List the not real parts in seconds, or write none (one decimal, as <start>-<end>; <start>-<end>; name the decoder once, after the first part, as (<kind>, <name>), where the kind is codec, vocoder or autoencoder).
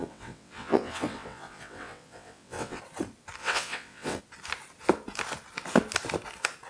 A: 0.0-2.8 (vocoder, WaveNeXt); 3.4-4.2